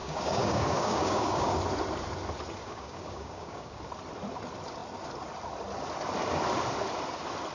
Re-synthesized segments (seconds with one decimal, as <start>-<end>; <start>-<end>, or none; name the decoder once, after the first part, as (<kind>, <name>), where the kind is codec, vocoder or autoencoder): 0.0-1.6 (codec, DAC); 2.6-3.8